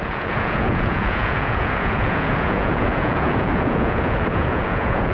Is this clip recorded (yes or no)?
no